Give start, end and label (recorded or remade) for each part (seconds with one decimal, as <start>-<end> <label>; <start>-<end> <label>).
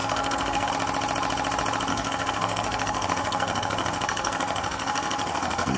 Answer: 0.0-0.7 remade; 0.7-1.9 recorded; 1.9-5.8 remade